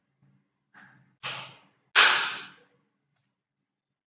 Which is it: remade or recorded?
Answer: recorded